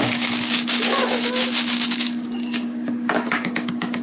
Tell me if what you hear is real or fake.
fake